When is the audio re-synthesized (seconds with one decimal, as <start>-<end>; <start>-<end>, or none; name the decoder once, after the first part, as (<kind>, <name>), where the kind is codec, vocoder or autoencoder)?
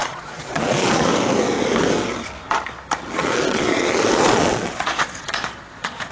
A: 0.0-1.1 (vocoder, Vocos); 3.1-6.1